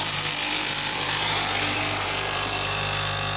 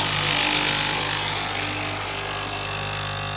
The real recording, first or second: second